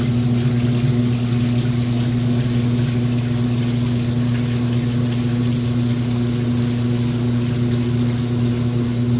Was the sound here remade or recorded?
recorded